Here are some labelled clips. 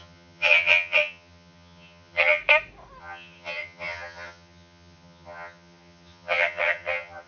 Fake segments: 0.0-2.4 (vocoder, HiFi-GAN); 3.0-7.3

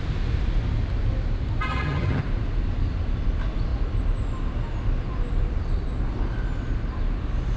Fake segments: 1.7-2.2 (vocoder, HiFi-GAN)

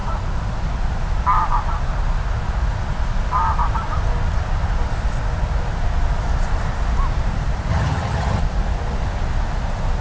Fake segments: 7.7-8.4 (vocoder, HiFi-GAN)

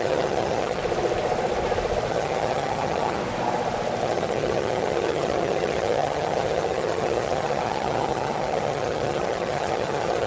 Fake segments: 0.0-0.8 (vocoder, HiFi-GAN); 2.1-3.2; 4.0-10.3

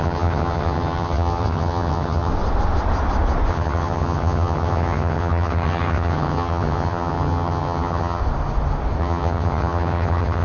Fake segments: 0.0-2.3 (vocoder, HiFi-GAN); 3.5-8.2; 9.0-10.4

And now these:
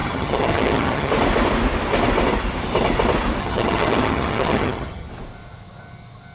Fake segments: 0.0-1.1 (vocoder, HiFi-GAN); 3.4-5.1